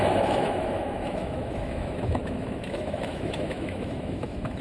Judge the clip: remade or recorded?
remade